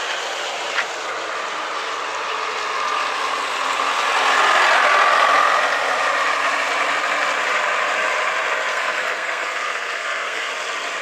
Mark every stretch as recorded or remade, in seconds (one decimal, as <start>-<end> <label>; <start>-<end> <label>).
0.0-8.7 recorded; 8.7-10.5 remade; 10.5-11.0 recorded